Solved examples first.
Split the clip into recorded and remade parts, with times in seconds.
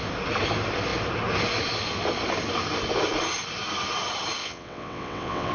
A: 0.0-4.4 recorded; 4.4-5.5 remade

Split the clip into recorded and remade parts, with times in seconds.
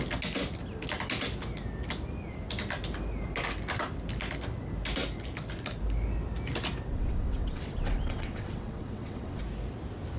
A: 0.0-6.9 recorded; 6.9-9.4 remade; 9.4-10.2 recorded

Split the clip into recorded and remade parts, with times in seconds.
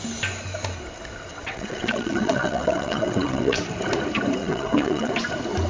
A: 0.0-1.3 recorded; 1.3-3.6 remade; 3.6-4.4 recorded; 4.4-5.1 remade; 5.1-5.7 recorded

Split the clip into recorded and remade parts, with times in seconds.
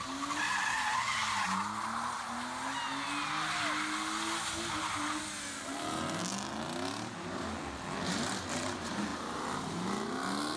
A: 0.0-10.6 recorded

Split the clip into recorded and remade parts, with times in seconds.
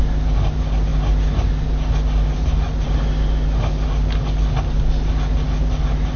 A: 0.0-6.2 recorded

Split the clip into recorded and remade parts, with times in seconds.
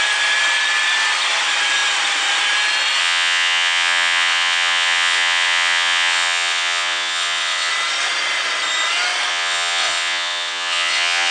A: 0.0-3.0 recorded; 3.0-7.7 remade; 7.7-9.3 recorded; 9.3-11.3 remade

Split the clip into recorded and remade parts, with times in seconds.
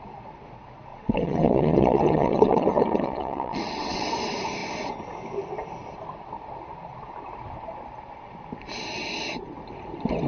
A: 0.0-0.9 recorded; 0.9-4.1 remade; 4.1-10.3 recorded